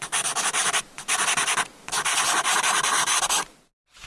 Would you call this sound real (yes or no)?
yes